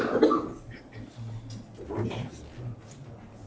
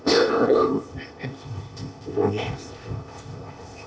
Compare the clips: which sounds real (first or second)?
first